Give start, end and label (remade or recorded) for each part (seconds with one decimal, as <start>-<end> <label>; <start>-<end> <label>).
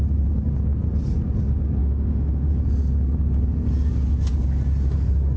0.0-1.8 recorded; 1.8-2.5 remade; 2.5-5.4 recorded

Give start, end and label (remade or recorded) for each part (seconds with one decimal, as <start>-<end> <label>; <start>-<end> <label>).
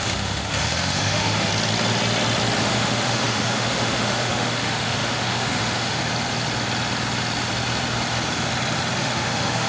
0.0-1.5 remade; 1.5-2.6 recorded; 2.6-6.0 remade; 6.0-9.0 recorded; 9.0-9.7 remade